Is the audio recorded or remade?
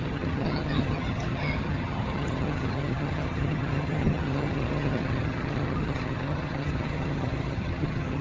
remade